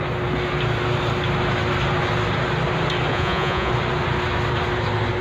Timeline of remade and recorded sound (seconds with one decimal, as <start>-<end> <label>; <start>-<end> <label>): 0.0-3.1 recorded; 3.1-3.7 remade; 3.7-5.2 recorded

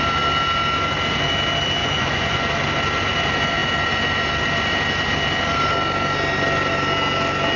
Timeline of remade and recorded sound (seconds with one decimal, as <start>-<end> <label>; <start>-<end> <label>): 0.0-1.8 recorded; 1.8-2.4 remade; 2.4-7.6 recorded

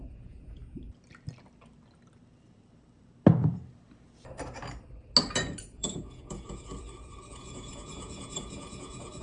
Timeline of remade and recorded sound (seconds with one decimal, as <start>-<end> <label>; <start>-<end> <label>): 0.0-0.6 remade; 0.6-5.6 recorded; 5.6-6.7 remade; 6.7-7.3 recorded; 7.3-9.2 remade

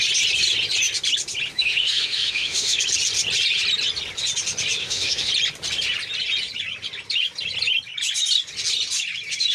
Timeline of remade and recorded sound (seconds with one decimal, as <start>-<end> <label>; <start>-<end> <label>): 0.0-1.5 recorded; 1.5-2.8 remade; 2.8-4.8 recorded; 4.8-5.3 remade; 5.3-9.5 recorded

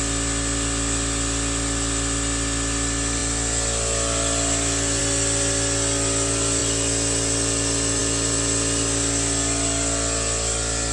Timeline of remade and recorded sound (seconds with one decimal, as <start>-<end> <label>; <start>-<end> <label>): 0.0-10.9 recorded

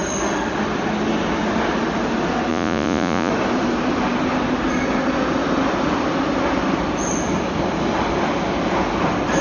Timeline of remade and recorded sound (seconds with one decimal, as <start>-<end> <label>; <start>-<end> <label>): 0.0-2.5 recorded; 2.5-3.3 remade; 3.3-9.4 recorded

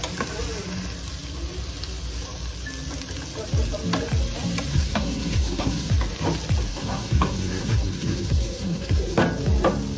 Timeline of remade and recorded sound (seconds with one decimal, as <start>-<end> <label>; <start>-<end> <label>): 0.0-4.7 recorded; 4.7-5.9 remade; 5.9-6.7 recorded; 6.7-9.2 remade; 9.2-10.0 recorded

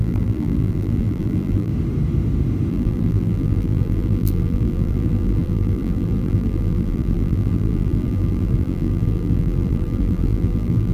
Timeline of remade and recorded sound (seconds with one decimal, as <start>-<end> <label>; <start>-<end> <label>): 0.0-1.7 remade; 1.7-2.7 recorded; 2.7-10.9 remade